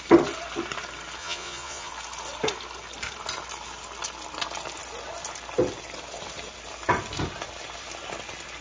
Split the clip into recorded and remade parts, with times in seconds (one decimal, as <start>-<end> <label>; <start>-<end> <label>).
0.0-1.2 recorded; 1.2-1.9 remade; 1.9-8.6 recorded